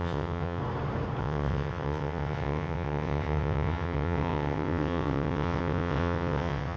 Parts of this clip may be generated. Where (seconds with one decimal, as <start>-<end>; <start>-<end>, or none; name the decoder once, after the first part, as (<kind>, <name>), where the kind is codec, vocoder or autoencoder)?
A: 0.0-0.6 (vocoder, WaveNeXt); 1.2-6.8